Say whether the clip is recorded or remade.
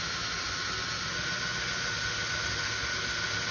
recorded